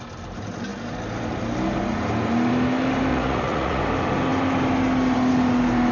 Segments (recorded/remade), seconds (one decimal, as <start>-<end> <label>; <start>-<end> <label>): 0.0-3.1 recorded; 3.1-3.8 remade; 3.8-5.9 recorded